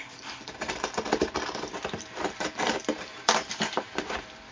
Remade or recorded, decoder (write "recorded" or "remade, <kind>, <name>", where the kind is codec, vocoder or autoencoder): remade, vocoder, BigVGAN v2